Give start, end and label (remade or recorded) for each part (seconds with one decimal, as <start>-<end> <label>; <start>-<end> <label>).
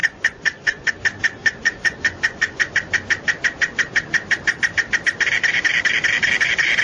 0.0-0.9 remade; 0.9-1.4 recorded; 1.4-2.7 remade; 2.7-6.8 recorded